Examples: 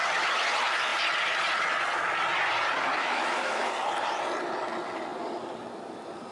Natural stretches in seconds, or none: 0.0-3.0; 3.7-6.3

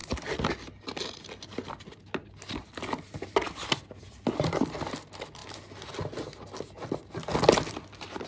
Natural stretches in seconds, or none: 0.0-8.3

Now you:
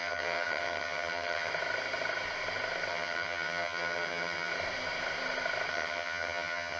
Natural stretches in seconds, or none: 1.5-2.9; 4.5-5.7

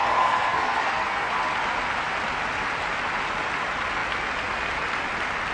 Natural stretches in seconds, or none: 1.3-5.5